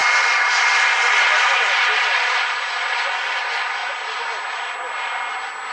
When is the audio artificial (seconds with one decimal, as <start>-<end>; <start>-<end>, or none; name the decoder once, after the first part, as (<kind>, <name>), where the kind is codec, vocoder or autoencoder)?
none